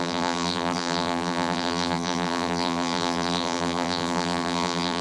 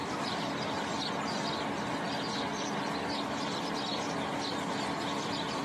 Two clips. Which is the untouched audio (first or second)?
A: second